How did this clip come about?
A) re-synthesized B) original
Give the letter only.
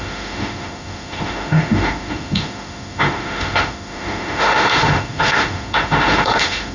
A